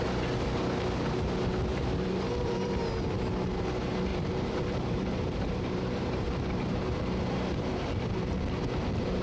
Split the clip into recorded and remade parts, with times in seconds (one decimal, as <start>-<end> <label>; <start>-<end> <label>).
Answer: 0.0-1.7 recorded; 1.7-2.8 remade; 2.8-4.1 recorded; 4.1-6.8 remade; 6.8-7.5 recorded; 7.5-8.3 remade; 8.3-9.2 recorded